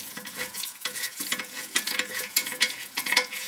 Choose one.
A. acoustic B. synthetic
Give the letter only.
B